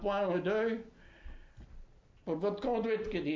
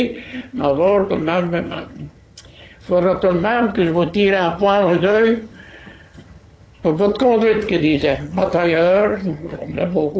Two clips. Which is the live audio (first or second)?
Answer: first